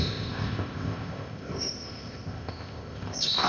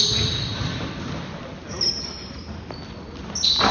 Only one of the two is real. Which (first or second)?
second